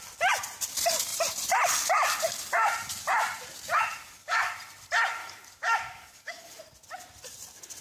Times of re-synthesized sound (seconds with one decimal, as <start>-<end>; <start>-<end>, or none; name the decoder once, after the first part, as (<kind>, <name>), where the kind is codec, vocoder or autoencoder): 4.0-4.5 (codec, DAC); 5.2-6.6